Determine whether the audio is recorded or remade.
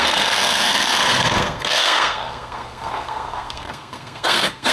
remade